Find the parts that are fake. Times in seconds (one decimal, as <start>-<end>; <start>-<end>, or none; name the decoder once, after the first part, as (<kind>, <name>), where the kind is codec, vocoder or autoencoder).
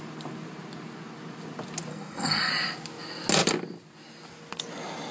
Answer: 1.9-2.5 (codec, SNAC)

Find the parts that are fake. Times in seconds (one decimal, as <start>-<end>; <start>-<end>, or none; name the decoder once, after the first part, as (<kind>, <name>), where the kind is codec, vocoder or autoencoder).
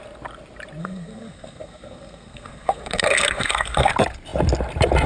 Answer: 0.8-3.9 (codec, SNAC)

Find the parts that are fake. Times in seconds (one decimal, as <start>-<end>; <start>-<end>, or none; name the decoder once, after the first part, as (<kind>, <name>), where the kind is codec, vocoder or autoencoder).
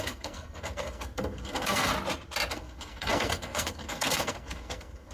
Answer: 0.0-1.9 (codec, SNAC); 2.5-5.1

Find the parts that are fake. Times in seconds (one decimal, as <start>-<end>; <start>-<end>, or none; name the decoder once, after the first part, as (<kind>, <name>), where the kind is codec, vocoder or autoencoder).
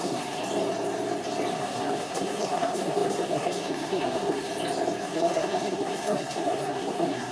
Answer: 0.0-0.4 (codec, SNAC); 1.5-4.5; 5.0-7.3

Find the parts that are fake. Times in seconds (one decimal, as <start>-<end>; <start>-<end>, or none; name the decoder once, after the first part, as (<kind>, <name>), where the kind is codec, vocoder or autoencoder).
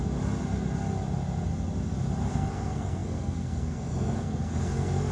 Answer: 2.3-5.1 (codec, SNAC)